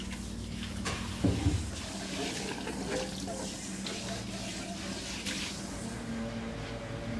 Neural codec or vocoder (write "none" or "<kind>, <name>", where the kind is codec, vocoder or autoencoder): none